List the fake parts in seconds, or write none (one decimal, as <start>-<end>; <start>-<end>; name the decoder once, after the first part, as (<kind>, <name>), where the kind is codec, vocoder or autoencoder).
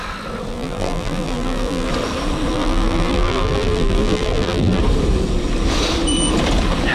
0.5-1.9 (vocoder, BigVGAN v2); 2.5-4.8